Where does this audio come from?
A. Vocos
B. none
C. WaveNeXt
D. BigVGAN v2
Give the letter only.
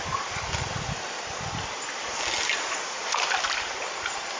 B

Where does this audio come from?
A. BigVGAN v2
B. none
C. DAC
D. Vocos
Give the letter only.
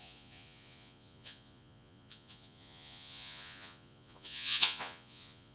D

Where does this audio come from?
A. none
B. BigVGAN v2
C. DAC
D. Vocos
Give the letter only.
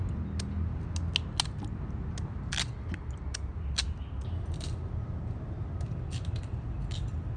A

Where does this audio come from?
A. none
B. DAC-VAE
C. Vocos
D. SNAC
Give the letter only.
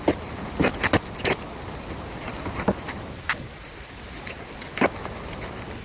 A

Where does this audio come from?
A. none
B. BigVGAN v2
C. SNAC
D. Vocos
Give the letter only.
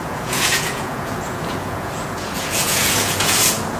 D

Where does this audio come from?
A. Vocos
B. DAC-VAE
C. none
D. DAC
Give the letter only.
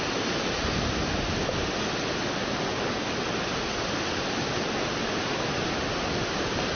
C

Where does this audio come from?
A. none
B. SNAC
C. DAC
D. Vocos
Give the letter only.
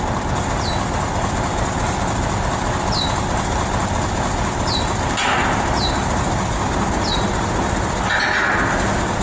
A